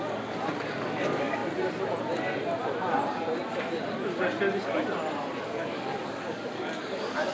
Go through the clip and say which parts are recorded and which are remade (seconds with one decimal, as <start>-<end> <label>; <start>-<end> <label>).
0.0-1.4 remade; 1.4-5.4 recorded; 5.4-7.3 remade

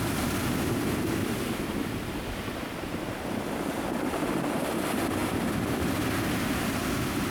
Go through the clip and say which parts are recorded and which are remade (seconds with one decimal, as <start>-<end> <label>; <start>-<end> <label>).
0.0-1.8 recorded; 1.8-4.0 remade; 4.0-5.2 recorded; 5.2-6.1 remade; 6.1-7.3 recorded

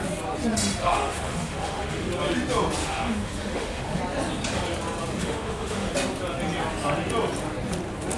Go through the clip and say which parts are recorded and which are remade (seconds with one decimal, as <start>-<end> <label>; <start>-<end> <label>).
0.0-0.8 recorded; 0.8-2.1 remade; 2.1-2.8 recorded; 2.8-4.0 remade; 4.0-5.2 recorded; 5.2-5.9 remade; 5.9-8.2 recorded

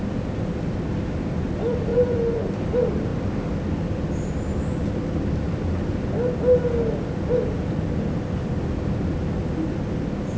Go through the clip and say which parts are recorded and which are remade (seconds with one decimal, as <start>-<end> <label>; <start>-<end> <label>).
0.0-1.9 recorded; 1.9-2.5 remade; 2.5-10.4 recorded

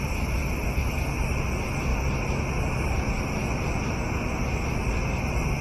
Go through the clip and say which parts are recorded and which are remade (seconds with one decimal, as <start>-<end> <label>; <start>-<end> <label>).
0.0-5.6 recorded

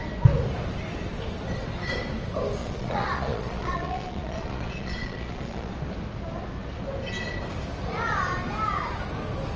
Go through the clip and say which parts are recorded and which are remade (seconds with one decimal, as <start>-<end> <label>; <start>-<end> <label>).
0.0-2.6 recorded; 2.6-5.7 remade; 5.7-9.6 recorded

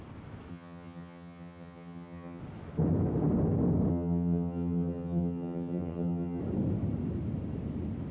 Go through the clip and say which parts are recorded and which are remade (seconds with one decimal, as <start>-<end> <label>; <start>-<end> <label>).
0.0-0.5 recorded; 0.5-2.4 remade; 2.4-3.9 recorded; 3.9-6.4 remade; 6.4-8.1 recorded

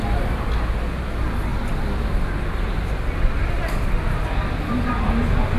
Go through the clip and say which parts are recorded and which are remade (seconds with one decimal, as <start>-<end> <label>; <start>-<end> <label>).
0.0-5.6 recorded